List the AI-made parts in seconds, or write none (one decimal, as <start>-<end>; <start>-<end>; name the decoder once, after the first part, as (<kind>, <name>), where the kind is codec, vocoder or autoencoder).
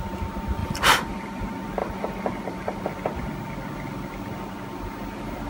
0.6-1.4 (vocoder, BigVGAN v2); 1.8-2.8